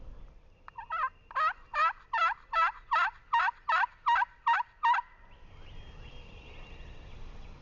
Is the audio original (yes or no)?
yes